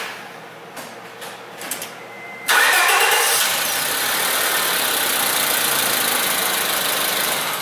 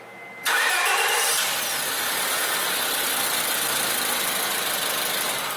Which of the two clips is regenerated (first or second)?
first